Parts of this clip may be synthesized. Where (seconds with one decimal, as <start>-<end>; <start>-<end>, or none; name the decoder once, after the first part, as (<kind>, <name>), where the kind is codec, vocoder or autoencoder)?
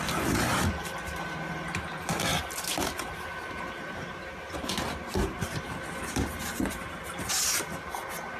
none